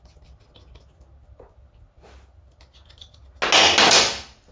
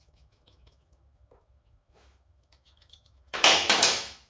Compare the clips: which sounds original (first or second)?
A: first